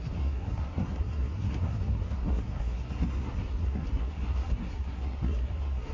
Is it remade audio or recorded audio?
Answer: remade